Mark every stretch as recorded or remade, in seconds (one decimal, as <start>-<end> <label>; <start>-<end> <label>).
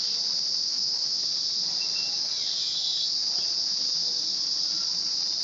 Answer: 0.0-0.6 recorded; 0.6-1.2 remade; 1.2-5.4 recorded